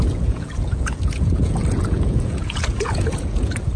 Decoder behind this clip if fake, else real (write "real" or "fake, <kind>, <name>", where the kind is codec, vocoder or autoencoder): fake, vocoder, Vocos